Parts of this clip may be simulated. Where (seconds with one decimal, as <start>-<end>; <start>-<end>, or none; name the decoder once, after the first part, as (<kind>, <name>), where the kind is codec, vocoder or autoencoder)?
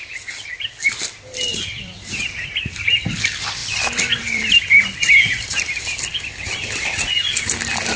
1.5-2.5 (vocoder, BigVGAN v2); 3.6-6.0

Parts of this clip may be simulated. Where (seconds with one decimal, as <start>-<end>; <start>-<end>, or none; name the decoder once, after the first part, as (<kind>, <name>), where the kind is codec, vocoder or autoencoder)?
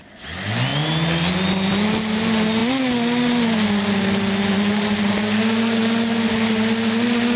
none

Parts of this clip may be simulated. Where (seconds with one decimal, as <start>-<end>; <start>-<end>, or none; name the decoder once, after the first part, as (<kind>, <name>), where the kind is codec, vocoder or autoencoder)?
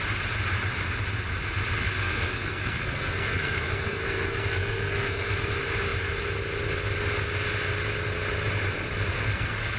1.8-5.5 (codec, SNAC); 9.1-9.8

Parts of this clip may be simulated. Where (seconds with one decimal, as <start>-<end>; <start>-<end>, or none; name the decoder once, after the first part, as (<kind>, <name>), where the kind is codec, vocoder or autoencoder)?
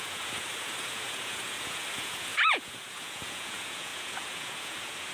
0.0-5.1 (vocoder, Vocos)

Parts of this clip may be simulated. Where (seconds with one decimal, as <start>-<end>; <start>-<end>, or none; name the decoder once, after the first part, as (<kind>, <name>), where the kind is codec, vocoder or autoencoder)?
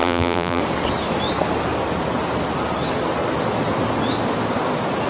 0.0-0.6 (vocoder, BigVGAN v2)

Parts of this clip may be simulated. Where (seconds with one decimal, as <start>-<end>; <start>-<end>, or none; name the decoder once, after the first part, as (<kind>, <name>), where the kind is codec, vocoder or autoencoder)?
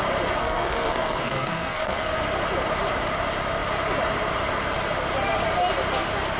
0.4-2.2 (codec, SNAC)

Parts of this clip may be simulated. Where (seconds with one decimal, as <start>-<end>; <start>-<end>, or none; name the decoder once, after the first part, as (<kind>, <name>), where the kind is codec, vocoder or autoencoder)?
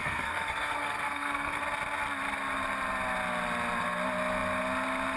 0.0-1.6 (codec, SNAC)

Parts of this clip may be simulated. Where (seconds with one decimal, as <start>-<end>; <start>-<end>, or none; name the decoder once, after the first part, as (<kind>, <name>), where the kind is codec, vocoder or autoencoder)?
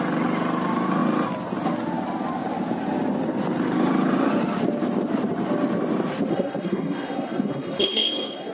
6.3-8.5 (codec, SNAC)